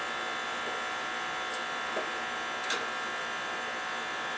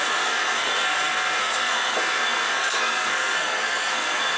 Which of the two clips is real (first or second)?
first